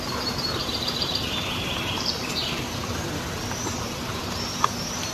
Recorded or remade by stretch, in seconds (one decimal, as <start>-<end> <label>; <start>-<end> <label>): 0.0-2.4 remade; 2.4-3.7 recorded; 3.7-5.1 remade